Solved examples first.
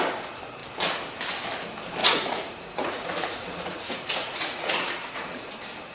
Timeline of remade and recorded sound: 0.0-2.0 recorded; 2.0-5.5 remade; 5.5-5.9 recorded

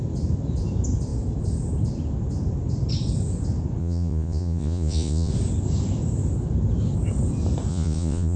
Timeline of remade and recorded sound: 0.0-3.8 recorded; 3.8-5.3 remade; 5.3-7.7 recorded; 7.7-8.4 remade

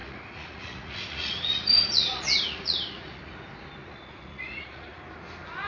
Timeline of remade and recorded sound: 0.0-3.4 remade; 3.4-3.8 recorded; 3.8-5.0 remade; 5.0-5.7 recorded

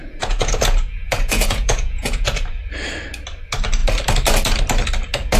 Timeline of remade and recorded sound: 0.0-2.5 remade; 2.5-5.4 recorded

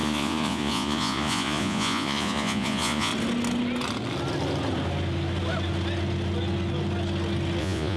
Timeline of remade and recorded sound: 0.0-3.1 remade; 3.1-7.6 recorded; 7.6-8.0 remade

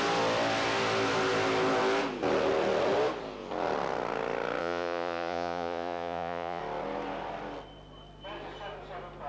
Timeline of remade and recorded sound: 0.0-4.6 recorded; 4.6-6.6 remade; 6.6-9.3 recorded

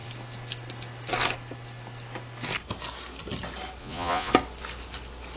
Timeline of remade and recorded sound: 0.0-3.8 recorded; 3.8-4.3 remade; 4.3-5.4 recorded